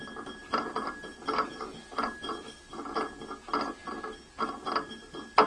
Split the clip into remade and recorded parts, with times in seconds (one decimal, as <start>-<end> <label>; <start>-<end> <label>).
0.0-5.5 recorded